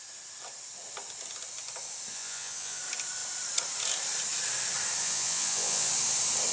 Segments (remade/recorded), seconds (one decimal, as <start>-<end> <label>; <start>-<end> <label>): 0.0-2.1 recorded; 2.1-2.8 remade; 2.8-5.0 recorded; 5.0-5.9 remade; 5.9-6.5 recorded